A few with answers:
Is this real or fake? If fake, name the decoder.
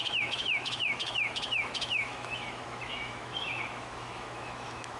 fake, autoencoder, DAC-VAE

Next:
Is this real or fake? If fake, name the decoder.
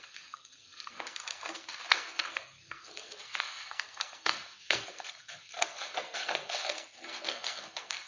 fake, codec, SNAC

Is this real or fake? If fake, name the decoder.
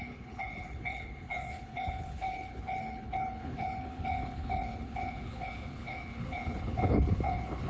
fake, codec, HILCodec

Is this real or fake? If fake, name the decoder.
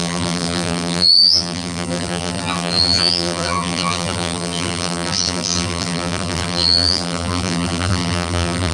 fake, vocoder, BigVGAN v2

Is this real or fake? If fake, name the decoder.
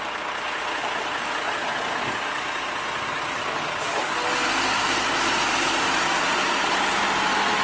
real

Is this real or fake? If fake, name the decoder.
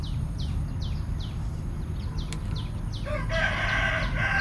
real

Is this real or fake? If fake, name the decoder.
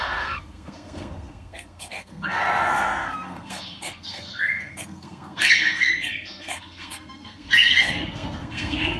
fake, codec, SNAC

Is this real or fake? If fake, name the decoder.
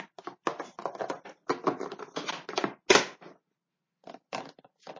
real